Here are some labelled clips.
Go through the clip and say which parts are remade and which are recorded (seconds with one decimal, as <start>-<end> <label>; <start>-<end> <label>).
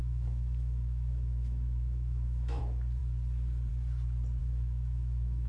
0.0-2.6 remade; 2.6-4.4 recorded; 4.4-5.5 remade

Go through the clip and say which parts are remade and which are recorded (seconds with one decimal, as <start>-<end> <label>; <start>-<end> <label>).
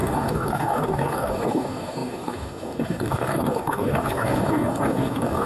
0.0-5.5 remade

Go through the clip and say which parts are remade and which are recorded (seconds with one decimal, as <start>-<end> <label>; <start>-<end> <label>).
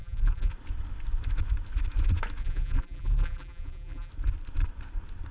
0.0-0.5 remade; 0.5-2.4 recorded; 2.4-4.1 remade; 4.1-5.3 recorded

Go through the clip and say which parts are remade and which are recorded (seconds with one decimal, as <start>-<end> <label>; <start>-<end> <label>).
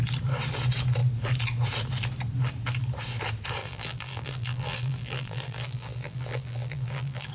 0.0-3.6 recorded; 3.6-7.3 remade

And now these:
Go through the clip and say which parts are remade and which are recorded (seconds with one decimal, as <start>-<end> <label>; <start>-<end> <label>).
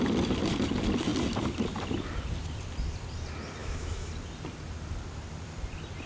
0.0-3.6 recorded; 3.6-4.1 remade; 4.1-6.1 recorded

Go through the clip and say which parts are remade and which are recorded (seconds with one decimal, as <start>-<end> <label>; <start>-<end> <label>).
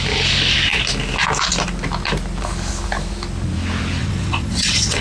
0.0-4.0 recorded; 4.0-5.0 remade